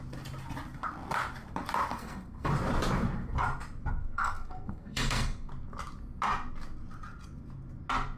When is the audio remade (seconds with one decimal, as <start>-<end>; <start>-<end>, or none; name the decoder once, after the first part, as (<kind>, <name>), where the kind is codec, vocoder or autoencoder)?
1.9-2.5 (codec, SNAC); 3.9-5.5